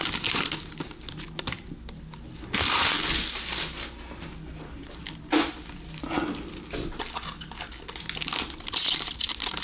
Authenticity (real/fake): real